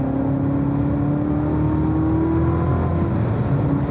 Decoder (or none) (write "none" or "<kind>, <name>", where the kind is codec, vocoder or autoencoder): none